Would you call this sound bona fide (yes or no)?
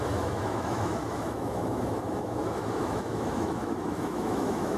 no